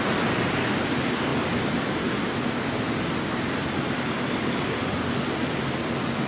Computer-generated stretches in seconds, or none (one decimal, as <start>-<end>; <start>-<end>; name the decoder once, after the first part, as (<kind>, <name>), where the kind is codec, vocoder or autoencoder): none